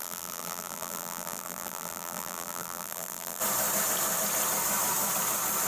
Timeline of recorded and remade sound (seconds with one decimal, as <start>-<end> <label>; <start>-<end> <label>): 0.0-3.4 remade; 3.4-5.7 recorded

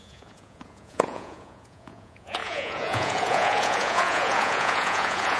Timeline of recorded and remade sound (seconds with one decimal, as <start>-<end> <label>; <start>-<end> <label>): 0.0-5.4 remade